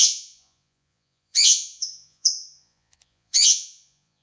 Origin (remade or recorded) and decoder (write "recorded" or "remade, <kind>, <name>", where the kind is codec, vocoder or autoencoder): remade, vocoder, Vocos